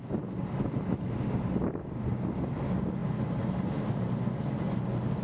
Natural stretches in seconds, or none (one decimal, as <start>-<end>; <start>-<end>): 0.0-5.2